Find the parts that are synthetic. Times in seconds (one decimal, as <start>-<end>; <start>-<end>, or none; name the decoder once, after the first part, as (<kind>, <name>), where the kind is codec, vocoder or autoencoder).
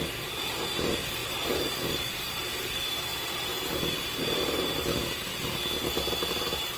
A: 0.0-3.5 (vocoder, BigVGAN v2); 4.2-5.3; 6.3-6.8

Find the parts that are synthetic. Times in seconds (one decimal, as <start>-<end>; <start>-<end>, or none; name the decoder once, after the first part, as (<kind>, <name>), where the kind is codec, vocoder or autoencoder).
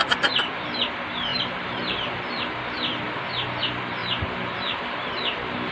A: 1.3-2.6 (vocoder, BigVGAN v2); 4.0-5.7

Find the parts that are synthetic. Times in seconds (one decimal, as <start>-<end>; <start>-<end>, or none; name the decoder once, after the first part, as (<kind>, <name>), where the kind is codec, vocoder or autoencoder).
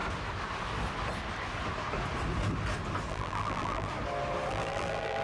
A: 3.1-3.9 (vocoder, BigVGAN v2); 4.5-5.2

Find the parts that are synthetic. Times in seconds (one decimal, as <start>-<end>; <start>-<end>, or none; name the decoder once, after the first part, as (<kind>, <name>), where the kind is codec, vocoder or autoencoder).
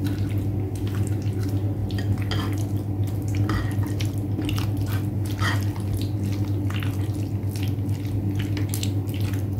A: none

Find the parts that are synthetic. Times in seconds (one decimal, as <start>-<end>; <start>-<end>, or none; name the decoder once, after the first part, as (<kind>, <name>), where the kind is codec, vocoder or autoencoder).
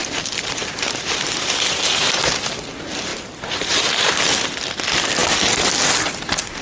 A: 0.0-2.2 (vocoder, BigVGAN v2); 3.1-4.2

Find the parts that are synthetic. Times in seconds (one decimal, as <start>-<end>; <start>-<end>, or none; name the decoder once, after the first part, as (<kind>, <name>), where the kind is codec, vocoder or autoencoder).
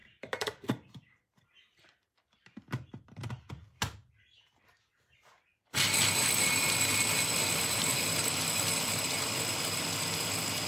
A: 0.0-3.3 (vocoder, BigVGAN v2); 7.4-8.4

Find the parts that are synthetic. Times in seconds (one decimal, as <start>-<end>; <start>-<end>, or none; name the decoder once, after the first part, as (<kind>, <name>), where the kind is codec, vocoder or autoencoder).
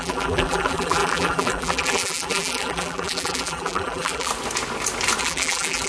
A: 0.0-4.3 (vocoder, BigVGAN v2); 5.2-5.9